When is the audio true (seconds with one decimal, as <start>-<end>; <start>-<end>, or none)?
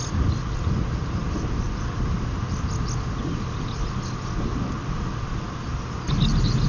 0.0-6.7